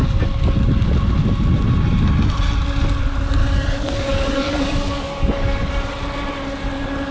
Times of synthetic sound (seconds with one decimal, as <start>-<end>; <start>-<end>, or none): 3.4-5.7

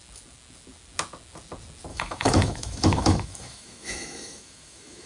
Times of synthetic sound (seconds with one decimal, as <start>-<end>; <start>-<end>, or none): 1.9-5.1

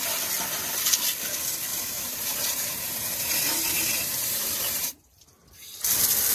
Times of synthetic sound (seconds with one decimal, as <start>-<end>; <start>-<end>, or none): 1.7-5.5

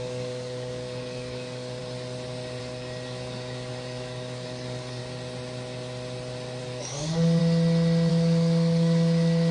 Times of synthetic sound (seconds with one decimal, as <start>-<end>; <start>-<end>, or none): 0.0-1.8; 2.6-5.0; 6.6-7.4; 8.1-9.5

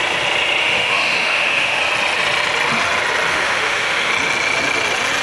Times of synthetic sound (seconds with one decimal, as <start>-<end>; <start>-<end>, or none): 0.6-1.8; 3.3-4.1